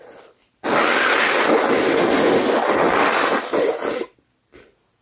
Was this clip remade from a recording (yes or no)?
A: no